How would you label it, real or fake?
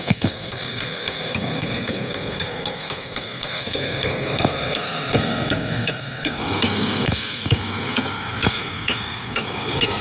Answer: fake